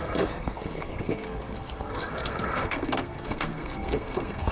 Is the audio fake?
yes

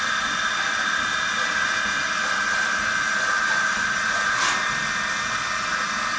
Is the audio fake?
no